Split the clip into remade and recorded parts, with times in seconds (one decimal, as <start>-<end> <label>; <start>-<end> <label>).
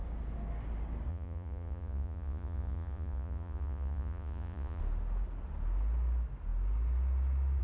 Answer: 0.0-1.1 recorded; 1.1-4.8 remade; 4.8-7.6 recorded